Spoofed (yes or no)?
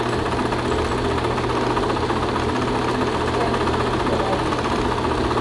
no